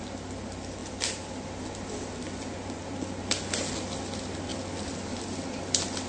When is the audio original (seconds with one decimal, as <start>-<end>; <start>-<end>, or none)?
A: 0.0-6.1